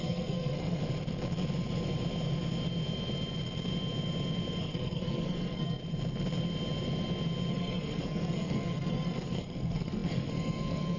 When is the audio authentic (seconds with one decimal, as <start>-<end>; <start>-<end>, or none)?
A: 0.8-4.6; 5.8-7.5